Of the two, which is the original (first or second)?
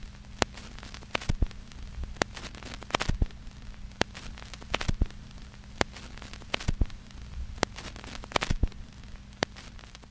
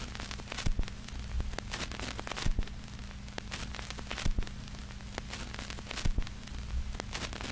second